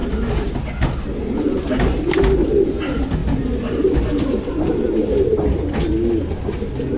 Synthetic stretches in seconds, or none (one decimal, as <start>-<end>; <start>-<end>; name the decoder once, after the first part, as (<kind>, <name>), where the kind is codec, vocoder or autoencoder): none